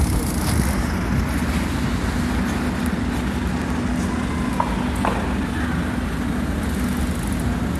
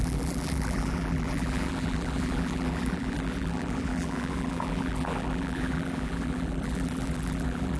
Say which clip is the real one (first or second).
first